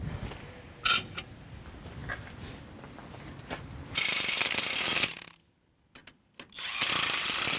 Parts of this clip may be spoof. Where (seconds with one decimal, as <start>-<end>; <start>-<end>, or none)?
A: none